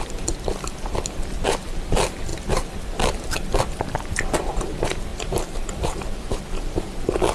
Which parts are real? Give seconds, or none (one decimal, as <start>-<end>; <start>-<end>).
0.0-5.1; 6.6-7.3